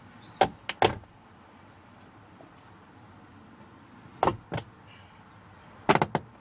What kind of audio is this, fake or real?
real